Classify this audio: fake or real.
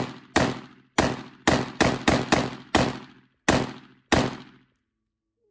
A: real